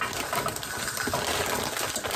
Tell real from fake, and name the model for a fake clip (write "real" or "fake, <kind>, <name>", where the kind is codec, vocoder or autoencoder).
real